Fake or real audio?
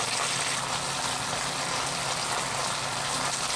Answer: real